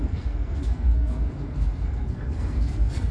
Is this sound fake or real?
fake